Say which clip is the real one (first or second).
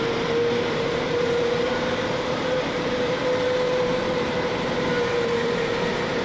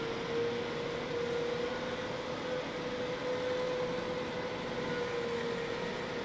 second